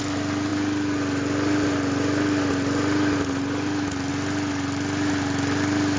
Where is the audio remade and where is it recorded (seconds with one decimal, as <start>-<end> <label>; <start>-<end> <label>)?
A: 0.0-6.0 recorded